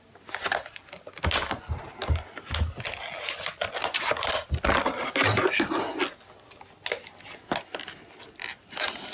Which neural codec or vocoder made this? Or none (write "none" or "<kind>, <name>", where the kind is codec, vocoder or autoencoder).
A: none